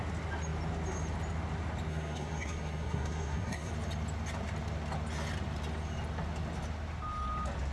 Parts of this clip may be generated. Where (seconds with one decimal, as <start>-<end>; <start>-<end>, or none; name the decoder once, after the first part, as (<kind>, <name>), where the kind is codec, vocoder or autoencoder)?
1.9-3.7 (codec, SNAC)